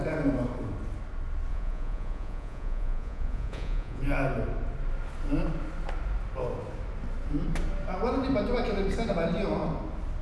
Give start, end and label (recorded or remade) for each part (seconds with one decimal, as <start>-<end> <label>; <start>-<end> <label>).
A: 0.0-1.5 recorded; 1.5-4.0 remade; 4.0-10.2 recorded